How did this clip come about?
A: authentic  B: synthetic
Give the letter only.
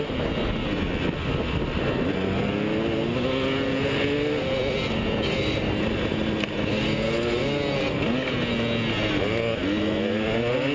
A